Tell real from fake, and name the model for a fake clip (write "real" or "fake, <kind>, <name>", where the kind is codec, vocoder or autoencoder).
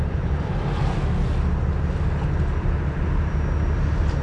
real